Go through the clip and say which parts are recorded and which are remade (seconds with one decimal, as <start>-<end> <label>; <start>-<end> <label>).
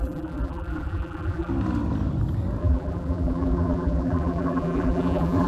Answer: 0.0-1.5 remade; 1.5-2.6 recorded; 2.6-5.5 remade